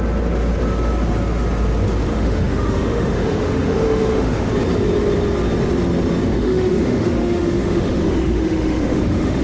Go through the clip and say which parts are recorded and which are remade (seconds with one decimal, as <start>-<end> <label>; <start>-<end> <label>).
0.0-2.1 recorded; 2.1-4.5 remade; 4.5-6.3 recorded; 6.3-9.4 remade